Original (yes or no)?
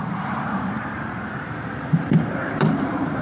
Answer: no